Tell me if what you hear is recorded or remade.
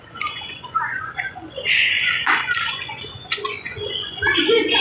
remade